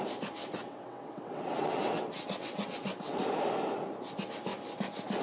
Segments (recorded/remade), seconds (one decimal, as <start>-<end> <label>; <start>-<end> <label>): 0.0-0.4 recorded; 0.4-3.2 remade; 3.2-5.2 recorded